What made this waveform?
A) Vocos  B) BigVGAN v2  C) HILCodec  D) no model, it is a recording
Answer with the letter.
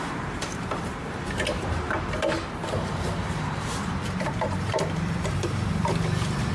B